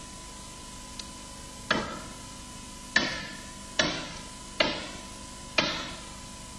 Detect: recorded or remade recorded